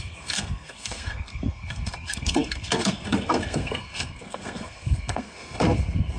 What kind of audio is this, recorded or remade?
remade